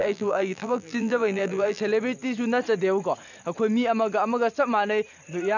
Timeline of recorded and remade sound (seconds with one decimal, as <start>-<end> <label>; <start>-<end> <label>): 0.0-1.8 remade; 1.8-5.6 recorded